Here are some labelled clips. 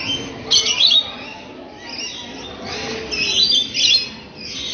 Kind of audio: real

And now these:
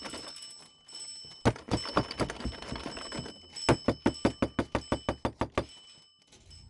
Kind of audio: real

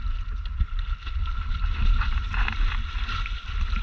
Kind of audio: real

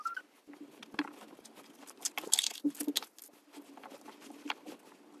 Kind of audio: real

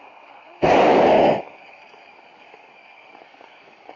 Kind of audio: fake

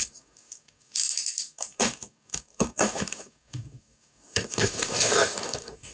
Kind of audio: fake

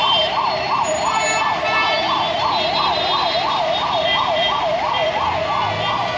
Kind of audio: real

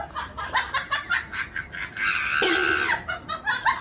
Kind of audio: real